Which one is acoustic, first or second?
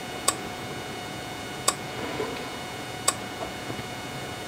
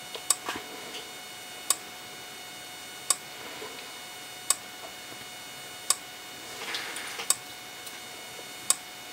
second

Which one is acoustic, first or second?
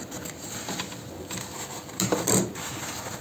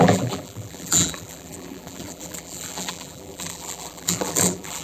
first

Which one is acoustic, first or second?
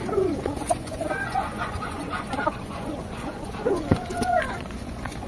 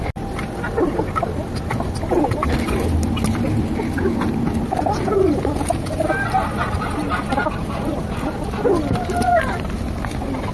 second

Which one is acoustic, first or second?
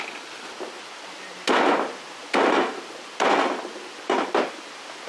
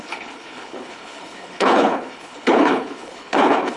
first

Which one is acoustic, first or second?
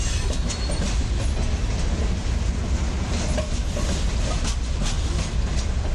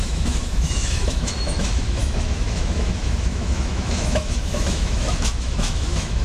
first